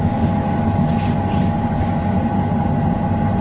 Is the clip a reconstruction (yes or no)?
no